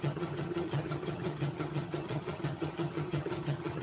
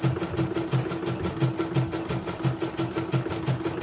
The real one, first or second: second